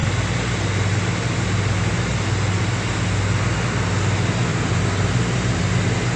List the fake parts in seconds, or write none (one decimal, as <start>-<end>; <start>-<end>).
4.5-5.6